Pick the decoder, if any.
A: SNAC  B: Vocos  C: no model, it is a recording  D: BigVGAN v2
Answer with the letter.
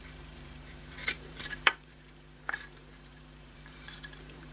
D